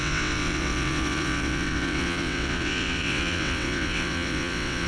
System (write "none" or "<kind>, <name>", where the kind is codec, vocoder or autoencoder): vocoder, WaveNeXt